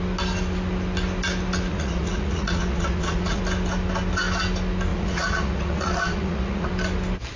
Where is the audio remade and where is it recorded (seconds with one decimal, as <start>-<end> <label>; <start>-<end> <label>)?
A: 0.0-1.7 recorded; 1.7-3.4 remade; 3.4-4.9 recorded; 4.9-6.7 remade; 6.7-7.4 recorded